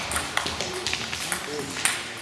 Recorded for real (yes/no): yes